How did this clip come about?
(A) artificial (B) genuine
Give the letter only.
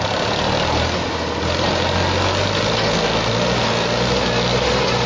B